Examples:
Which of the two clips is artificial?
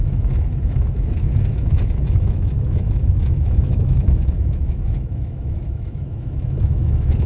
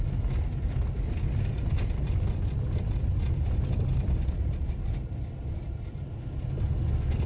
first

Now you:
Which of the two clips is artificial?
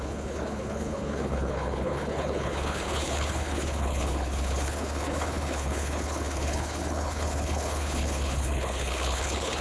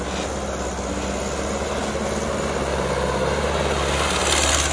first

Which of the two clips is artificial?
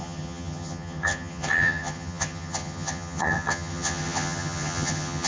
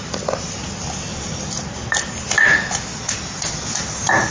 first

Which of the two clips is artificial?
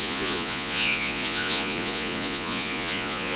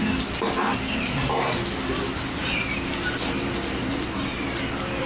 first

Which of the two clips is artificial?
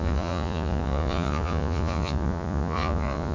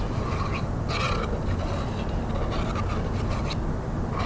first